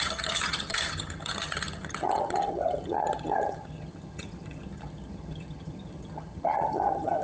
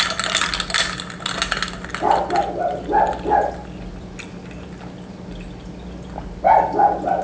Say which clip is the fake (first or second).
first